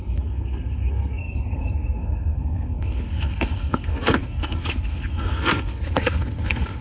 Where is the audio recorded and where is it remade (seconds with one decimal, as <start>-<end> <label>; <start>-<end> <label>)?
0.0-6.8 remade